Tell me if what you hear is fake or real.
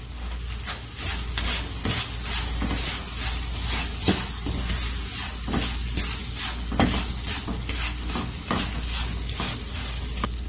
real